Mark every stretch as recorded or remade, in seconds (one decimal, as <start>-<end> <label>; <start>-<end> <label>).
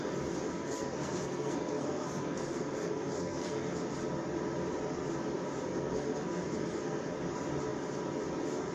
0.0-0.5 recorded; 0.5-3.8 remade; 3.8-5.7 recorded; 5.7-7.1 remade; 7.1-8.7 recorded